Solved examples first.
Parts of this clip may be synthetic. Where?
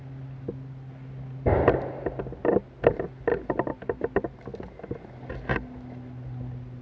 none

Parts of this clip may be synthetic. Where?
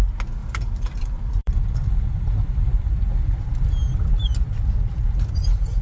0.4-2.9 (vocoder, BigVGAN v2)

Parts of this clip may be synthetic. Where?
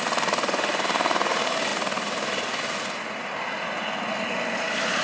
none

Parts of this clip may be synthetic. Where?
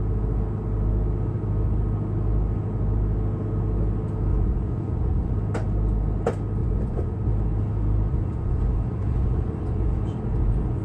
4.3-5.3 (vocoder, Vocos); 6.6-7.3; 8.1-10.8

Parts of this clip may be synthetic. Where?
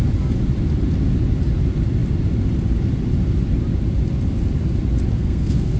5.1-5.8 (codec, SNAC)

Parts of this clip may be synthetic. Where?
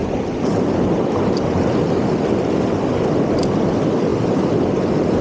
4.1-4.6 (vocoder, BigVGAN v2)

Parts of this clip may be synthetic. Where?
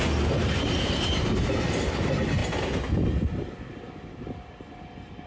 none